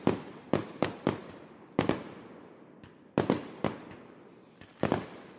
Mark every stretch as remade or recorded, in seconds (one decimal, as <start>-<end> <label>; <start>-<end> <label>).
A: 0.0-5.4 recorded